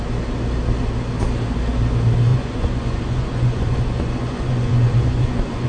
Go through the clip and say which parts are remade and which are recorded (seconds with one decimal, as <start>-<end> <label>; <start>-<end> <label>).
0.0-2.3 recorded; 2.3-5.7 remade